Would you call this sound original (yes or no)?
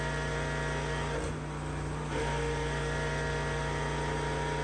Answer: yes